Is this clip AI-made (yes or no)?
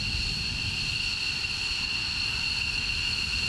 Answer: no